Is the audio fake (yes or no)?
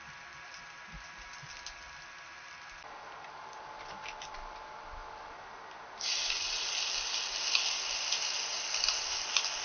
no